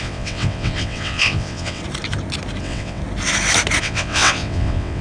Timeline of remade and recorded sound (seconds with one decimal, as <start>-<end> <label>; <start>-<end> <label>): 0.0-1.8 remade; 1.8-2.6 recorded; 2.6-3.0 remade; 3.0-3.8 recorded; 3.8-5.0 remade